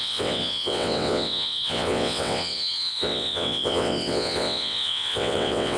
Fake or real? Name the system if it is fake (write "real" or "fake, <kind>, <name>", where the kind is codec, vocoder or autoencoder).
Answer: fake, vocoder, WaveNeXt